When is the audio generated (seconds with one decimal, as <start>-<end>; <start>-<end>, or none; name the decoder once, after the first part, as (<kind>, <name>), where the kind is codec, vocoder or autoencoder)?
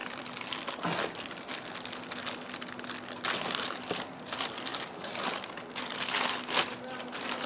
none